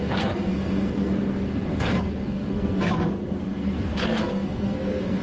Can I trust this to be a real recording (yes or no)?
no